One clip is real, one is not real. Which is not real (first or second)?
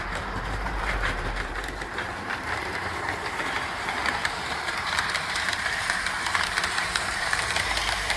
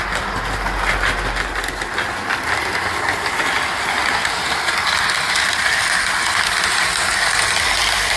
first